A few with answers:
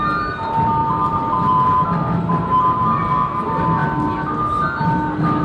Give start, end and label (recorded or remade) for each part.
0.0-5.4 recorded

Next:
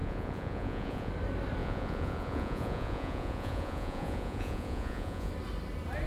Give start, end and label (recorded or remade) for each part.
0.0-1.1 remade; 1.1-1.6 recorded; 1.6-5.3 remade; 5.3-6.1 recorded

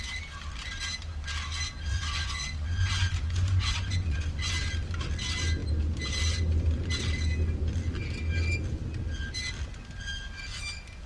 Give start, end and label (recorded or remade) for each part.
0.0-1.9 recorded; 1.9-4.5 remade; 4.5-11.1 recorded